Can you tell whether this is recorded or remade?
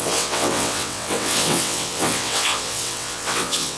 remade